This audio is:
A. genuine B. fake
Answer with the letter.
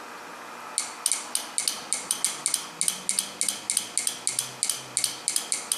A